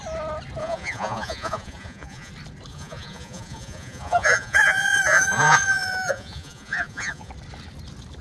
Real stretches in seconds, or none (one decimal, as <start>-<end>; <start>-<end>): 0.0-0.6; 2.3-2.7; 7.3-8.2